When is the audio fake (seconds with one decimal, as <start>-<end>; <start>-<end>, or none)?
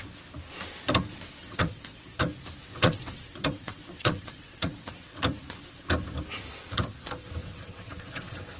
1.4-2.2; 2.6-5.2; 7.4-8.6